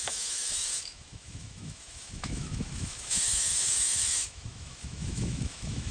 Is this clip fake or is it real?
fake